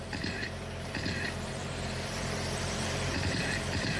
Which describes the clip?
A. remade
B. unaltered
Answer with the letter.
A